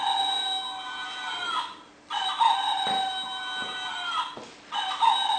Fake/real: real